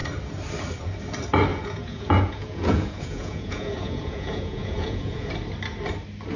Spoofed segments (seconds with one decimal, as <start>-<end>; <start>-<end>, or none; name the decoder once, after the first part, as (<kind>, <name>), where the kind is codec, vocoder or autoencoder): 1.5-5.3 (vocoder, Vocos)